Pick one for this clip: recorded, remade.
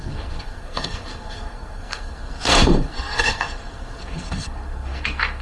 remade